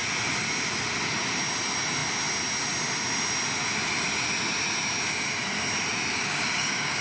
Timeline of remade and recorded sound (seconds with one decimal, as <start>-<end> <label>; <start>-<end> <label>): 0.0-6.1 recorded; 6.1-7.0 remade